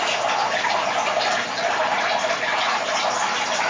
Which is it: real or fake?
real